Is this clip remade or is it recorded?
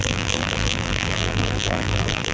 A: remade